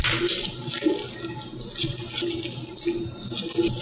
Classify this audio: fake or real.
real